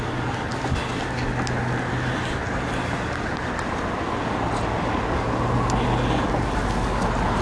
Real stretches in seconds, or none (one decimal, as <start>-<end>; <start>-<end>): 0.0-7.4